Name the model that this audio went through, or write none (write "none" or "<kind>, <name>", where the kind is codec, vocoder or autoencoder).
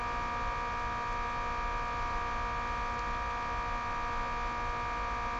none